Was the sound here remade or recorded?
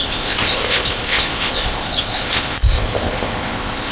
remade